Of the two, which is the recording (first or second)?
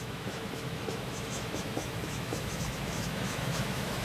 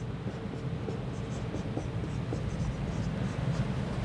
second